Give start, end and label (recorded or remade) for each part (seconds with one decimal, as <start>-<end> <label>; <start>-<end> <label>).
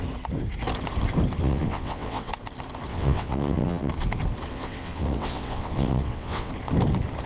0.0-1.4 recorded; 1.4-2.3 remade; 2.3-2.9 recorded; 2.9-3.9 remade; 3.9-4.5 recorded; 4.5-6.5 remade; 6.5-7.3 recorded